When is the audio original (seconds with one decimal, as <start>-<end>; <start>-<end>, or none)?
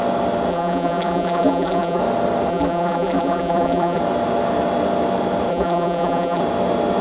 0.0-0.5; 2.0-2.5; 4.0-5.5; 6.4-7.0